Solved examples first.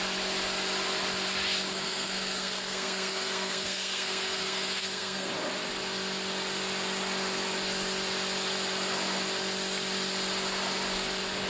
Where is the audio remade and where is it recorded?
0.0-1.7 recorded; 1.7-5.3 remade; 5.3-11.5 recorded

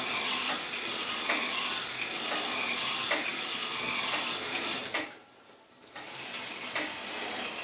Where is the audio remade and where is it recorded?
0.0-4.8 recorded; 4.8-6.4 remade; 6.4-7.6 recorded

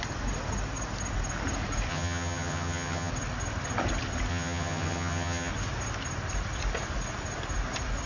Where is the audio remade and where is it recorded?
0.0-1.9 recorded; 1.9-3.1 remade; 3.1-4.3 recorded; 4.3-5.5 remade; 5.5-8.1 recorded

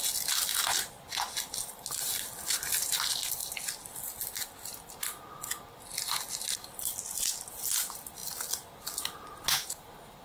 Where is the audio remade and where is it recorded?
0.0-10.2 recorded

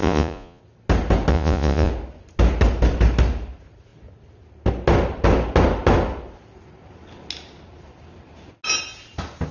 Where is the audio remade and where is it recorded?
0.0-0.6 remade; 0.6-1.3 recorded; 1.3-1.9 remade; 1.9-9.5 recorded

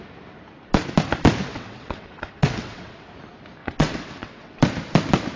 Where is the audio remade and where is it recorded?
0.0-1.5 recorded; 1.5-3.1 remade; 3.1-3.6 recorded; 3.6-4.5 remade; 4.5-5.4 recorded